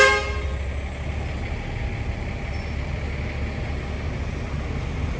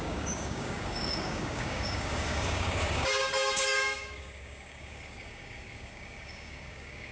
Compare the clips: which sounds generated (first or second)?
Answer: second